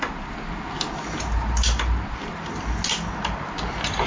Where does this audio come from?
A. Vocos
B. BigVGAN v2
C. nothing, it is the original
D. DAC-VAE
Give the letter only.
C